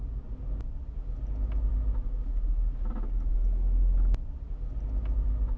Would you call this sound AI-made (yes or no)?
no